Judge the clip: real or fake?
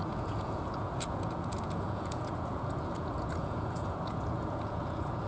fake